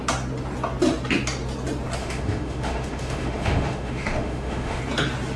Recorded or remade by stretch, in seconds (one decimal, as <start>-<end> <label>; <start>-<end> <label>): 0.0-2.0 recorded; 2.0-4.8 remade; 4.8-5.4 recorded